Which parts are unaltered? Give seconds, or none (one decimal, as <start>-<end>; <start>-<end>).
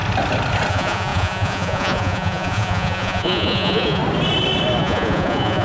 0.0-0.7; 4.0-4.8